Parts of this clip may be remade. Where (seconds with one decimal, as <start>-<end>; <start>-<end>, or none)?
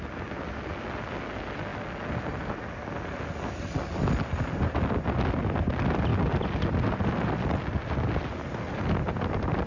none